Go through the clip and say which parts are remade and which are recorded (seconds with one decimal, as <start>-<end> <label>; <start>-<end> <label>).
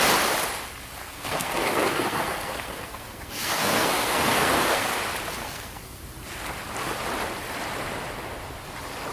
0.0-1.0 recorded; 1.0-5.0 remade; 5.0-5.4 recorded; 5.4-6.0 remade; 6.0-9.1 recorded